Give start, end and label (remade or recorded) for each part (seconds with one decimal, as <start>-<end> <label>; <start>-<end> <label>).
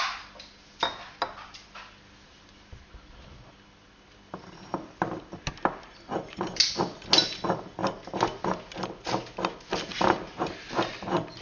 0.0-11.4 recorded